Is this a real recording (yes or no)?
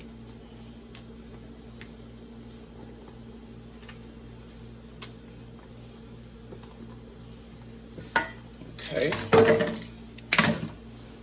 yes